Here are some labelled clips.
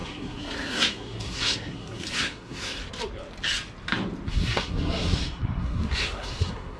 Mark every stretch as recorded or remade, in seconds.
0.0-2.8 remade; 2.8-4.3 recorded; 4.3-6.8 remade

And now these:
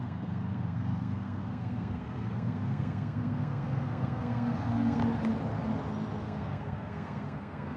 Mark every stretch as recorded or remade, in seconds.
0.0-5.0 remade; 5.0-6.2 recorded; 6.2-7.8 remade

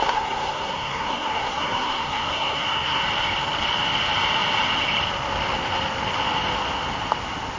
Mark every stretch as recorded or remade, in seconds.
0.0-3.0 remade; 3.0-7.6 recorded

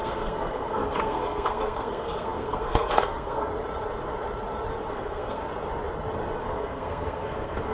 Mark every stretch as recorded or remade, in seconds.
0.0-3.5 remade; 3.5-4.9 recorded; 4.9-5.4 remade; 5.4-6.4 recorded; 6.4-7.7 remade

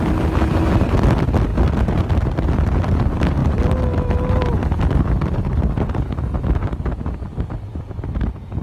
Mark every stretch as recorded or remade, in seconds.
0.0-8.6 recorded

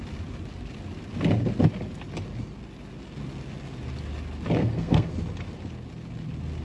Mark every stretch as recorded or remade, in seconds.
0.0-4.6 recorded; 4.6-5.1 remade; 5.1-6.6 recorded

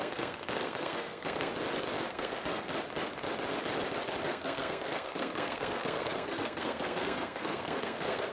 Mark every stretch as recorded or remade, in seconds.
0.0-1.5 remade; 1.5-2.1 recorded; 2.1-2.7 remade; 2.7-4.2 recorded; 4.2-8.3 remade